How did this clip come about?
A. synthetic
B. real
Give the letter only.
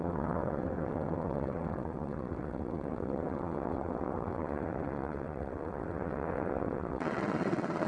A